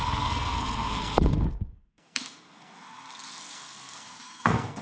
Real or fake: fake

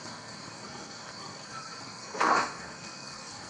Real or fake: fake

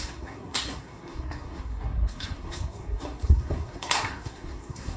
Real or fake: fake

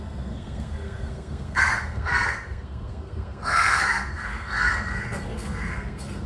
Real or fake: fake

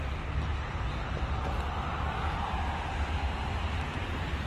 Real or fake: real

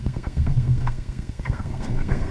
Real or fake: fake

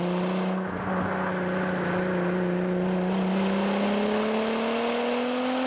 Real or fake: real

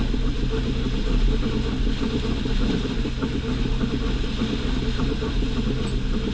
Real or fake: real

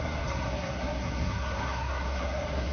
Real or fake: fake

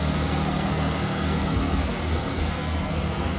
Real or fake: fake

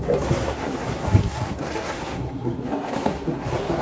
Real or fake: fake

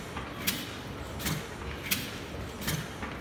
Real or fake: real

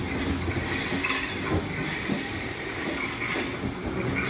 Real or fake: real